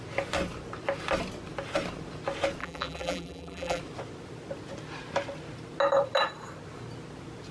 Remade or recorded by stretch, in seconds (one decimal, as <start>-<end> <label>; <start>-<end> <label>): 0.0-2.6 recorded; 2.6-3.8 remade; 3.8-7.5 recorded